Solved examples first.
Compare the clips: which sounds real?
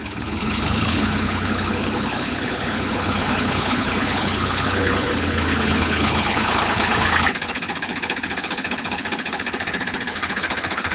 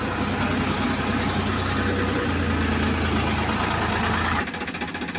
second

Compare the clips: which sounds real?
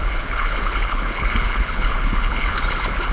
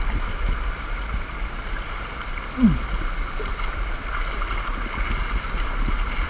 second